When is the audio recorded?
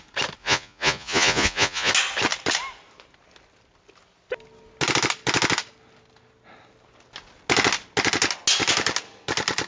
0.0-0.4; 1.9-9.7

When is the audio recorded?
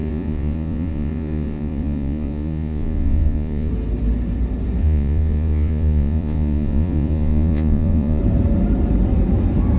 3.7-4.8; 8.2-9.8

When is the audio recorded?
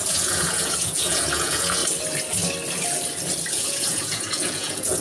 1.8-3.5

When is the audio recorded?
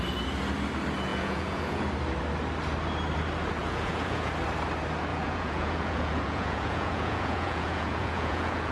0.0-1.1; 1.8-3.6; 4.3-5.1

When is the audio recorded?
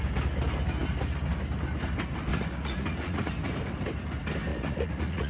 0.0-2.3; 3.3-4.5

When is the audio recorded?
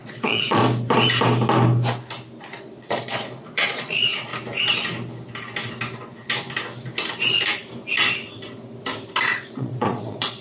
0.6-2.4; 4.3-9.3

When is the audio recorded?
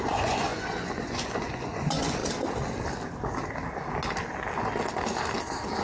2.2-5.8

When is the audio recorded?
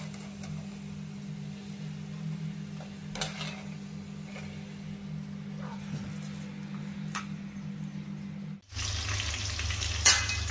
0.0-10.5